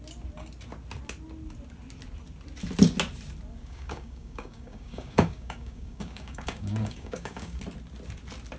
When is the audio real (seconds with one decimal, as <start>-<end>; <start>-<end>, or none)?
0.0-3.6; 7.6-8.6